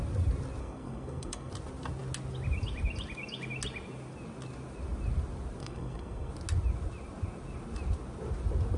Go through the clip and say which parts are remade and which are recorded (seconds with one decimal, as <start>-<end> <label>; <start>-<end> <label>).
0.0-0.6 recorded; 0.6-1.5 remade; 1.5-5.6 recorded; 5.6-6.3 remade; 6.3-8.8 recorded